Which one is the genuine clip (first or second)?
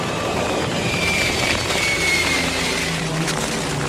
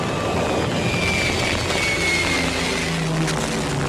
second